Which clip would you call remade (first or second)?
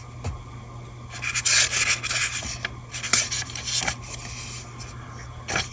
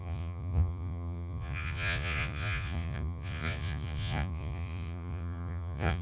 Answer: second